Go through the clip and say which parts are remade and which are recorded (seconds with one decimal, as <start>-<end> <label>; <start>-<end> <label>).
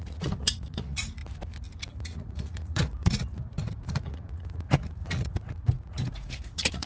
0.0-1.2 remade; 1.2-1.9 recorded; 1.9-6.9 remade